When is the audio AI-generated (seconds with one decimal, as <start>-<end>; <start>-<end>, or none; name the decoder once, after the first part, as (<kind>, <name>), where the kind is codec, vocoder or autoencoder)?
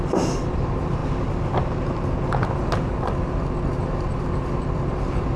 none